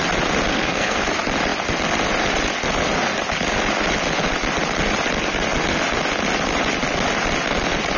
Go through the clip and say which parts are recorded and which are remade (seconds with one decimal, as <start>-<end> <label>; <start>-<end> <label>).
0.0-0.5 recorded; 0.5-1.0 remade; 1.0-8.0 recorded